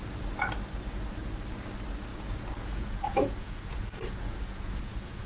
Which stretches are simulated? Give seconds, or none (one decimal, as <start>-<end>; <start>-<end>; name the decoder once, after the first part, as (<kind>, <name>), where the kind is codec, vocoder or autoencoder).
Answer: 2.1-5.3 (vocoder, Vocos)